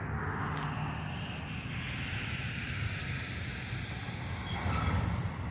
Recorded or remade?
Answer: recorded